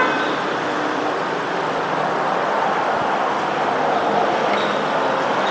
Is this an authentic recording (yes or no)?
yes